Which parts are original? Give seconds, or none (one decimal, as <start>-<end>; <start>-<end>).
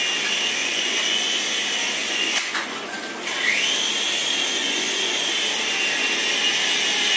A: 0.0-0.6; 1.4-2.0; 3.0-4.6; 5.3-7.2